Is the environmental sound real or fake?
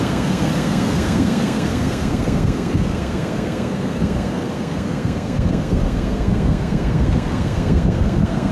fake